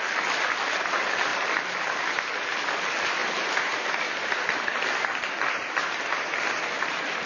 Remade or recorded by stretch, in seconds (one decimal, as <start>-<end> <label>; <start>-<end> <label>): 0.0-7.3 recorded